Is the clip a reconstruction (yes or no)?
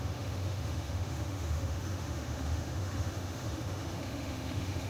yes